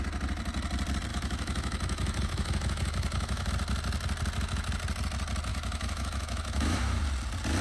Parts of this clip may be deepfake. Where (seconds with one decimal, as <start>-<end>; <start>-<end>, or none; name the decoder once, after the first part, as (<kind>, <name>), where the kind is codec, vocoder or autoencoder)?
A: 1.1-3.5 (autoencoder, DAC-VAE); 5.5-7.0